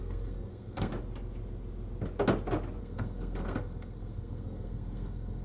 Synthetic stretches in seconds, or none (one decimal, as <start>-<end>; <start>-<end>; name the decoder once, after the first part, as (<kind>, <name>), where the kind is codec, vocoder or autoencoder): 0.0-0.9 (codec, SNAC); 2.8-5.4